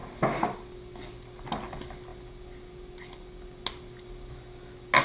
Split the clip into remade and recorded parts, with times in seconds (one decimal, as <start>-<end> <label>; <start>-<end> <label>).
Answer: 0.0-5.0 recorded